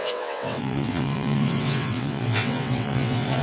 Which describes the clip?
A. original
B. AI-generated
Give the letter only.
B